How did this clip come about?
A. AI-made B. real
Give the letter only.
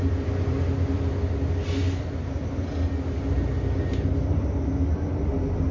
B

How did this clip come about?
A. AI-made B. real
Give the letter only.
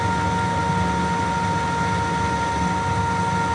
B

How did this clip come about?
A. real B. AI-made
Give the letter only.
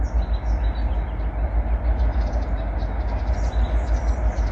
A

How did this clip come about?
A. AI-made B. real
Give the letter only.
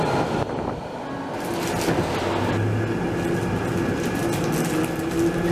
B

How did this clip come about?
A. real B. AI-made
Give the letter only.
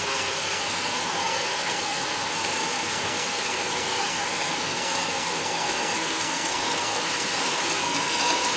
B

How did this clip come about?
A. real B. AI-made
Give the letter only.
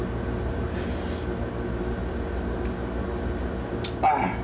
A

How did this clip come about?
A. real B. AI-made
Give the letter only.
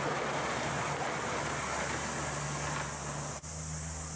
A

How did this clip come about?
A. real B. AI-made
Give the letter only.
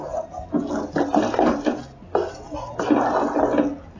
A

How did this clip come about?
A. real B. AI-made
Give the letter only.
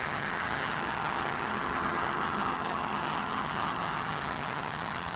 B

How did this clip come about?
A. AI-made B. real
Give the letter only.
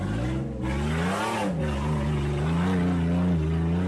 B